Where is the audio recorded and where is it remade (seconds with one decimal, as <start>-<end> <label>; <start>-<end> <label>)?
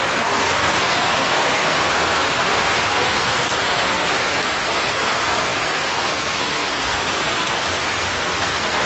0.0-8.9 remade